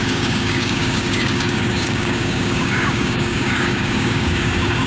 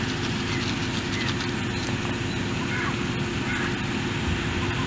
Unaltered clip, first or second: second